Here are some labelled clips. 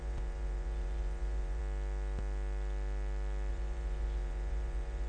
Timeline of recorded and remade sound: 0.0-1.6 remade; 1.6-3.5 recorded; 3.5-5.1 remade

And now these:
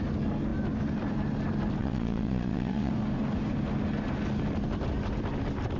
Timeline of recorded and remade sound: 0.0-1.8 recorded; 1.8-2.9 remade; 2.9-5.8 recorded

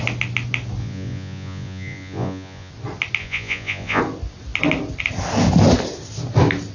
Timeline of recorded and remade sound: 0.0-0.8 recorded; 0.8-2.7 remade; 2.7-3.2 recorded; 3.2-4.0 remade; 4.0-6.7 recorded

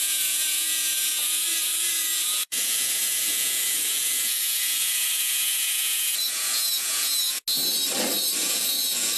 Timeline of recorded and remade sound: 0.0-7.4 remade; 7.4-8.4 recorded; 8.4-9.2 remade